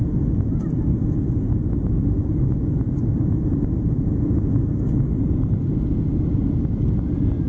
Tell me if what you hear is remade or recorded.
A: recorded